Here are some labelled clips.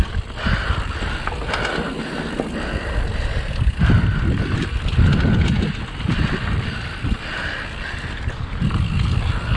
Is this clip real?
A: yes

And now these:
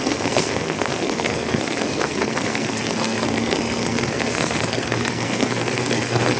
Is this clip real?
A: no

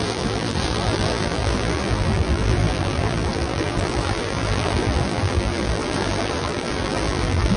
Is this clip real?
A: no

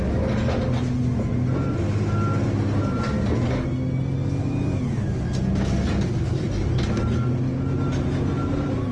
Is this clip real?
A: yes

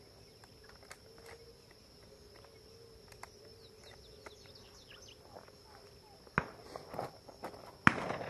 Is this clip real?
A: yes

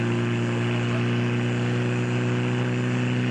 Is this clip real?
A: yes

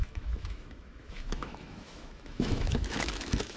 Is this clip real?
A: no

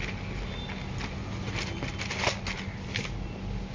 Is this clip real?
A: yes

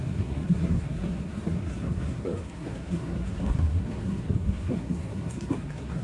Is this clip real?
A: no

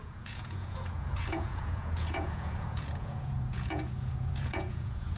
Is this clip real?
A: no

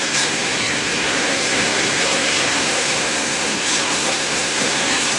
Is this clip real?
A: no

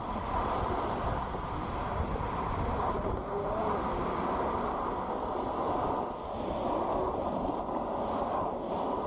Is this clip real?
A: yes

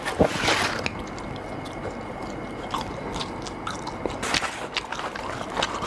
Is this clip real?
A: yes